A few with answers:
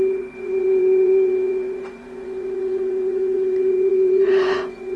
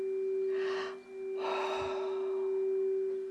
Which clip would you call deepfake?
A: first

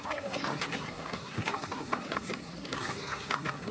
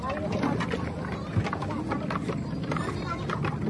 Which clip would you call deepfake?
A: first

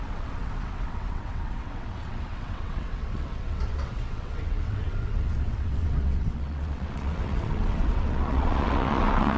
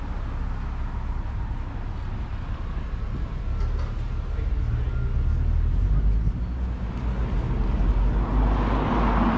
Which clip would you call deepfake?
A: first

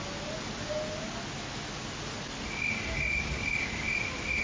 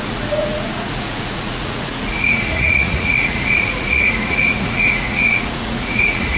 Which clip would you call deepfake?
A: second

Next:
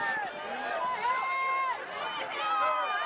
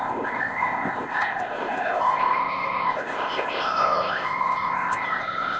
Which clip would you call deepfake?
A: second